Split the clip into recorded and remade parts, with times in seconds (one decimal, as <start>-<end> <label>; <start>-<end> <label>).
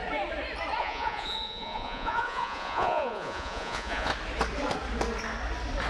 0.0-0.8 recorded; 0.8-4.1 remade; 4.1-5.9 recorded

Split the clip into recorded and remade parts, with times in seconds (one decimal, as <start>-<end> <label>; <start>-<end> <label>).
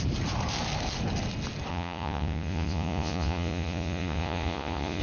0.0-1.7 recorded; 1.7-5.0 remade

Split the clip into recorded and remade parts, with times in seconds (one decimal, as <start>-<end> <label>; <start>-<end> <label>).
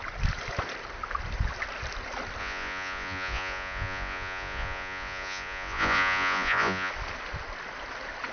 0.0-2.4 recorded; 2.4-6.9 remade; 6.9-8.3 recorded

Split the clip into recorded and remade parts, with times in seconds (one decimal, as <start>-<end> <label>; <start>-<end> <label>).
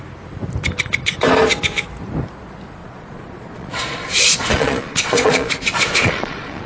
0.0-2.8 recorded; 2.8-6.7 remade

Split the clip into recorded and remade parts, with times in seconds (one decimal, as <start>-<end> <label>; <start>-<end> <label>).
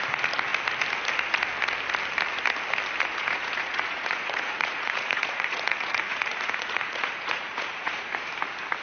0.0-3.1 recorded; 3.1-8.3 remade; 8.3-8.8 recorded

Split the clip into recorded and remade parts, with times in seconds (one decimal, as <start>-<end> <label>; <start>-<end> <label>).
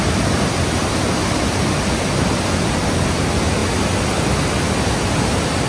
0.0-5.7 recorded